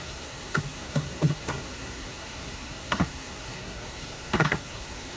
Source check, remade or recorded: remade